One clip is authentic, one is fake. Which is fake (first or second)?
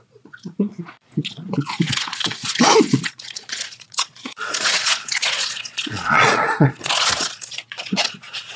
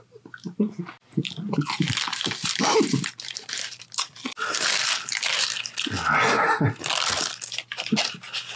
first